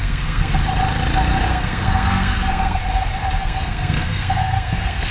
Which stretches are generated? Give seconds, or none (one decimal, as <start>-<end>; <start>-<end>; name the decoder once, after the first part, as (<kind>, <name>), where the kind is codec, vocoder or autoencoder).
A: 0.0-0.6 (codec, SNAC); 1.5-2.8; 3.4-5.1